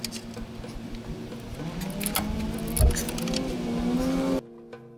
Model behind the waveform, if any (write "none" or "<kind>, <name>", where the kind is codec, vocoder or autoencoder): none